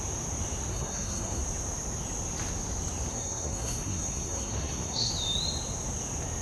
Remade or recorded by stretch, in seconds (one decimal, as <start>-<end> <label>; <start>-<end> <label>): 0.0-0.7 recorded; 0.7-1.4 remade; 1.4-3.1 recorded; 3.1-5.1 remade; 5.1-6.4 recorded